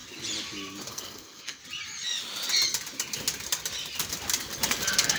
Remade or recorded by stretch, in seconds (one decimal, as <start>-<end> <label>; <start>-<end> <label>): 0.0-0.9 recorded; 0.9-1.6 remade; 1.6-4.7 recorded; 4.7-5.2 remade